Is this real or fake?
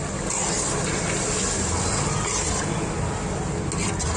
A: real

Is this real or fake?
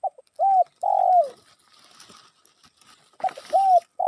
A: real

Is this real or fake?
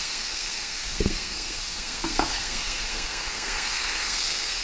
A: fake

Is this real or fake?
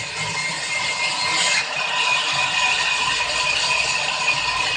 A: real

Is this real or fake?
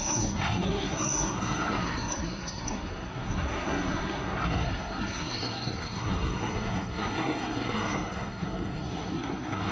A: fake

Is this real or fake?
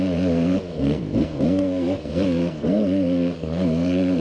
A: fake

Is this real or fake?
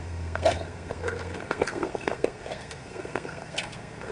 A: fake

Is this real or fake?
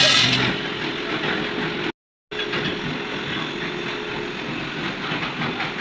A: real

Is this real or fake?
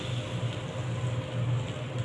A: real